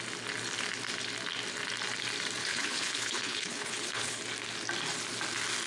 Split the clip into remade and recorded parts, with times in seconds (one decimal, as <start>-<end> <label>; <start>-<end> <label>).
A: 0.0-2.4 recorded; 2.4-4.2 remade; 4.2-5.7 recorded

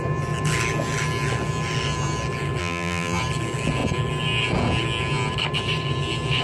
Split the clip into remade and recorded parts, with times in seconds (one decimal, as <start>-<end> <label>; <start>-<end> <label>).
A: 0.0-2.6 recorded; 2.6-3.2 remade; 3.2-6.4 recorded